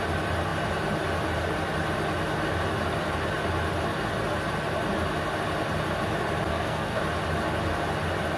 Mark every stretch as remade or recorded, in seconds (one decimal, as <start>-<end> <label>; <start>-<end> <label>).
0.0-6.5 recorded; 6.5-7.0 remade; 7.0-8.4 recorded